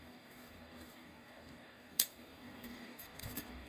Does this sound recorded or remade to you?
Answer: remade